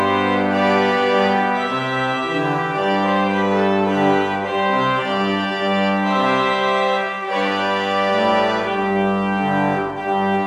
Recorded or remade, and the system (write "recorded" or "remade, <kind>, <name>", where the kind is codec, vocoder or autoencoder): recorded